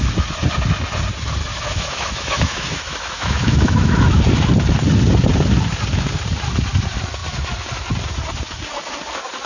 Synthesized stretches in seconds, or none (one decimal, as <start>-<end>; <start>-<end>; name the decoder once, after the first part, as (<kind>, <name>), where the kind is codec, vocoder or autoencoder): 1.5-4.2 (autoencoder, DAC-VAE)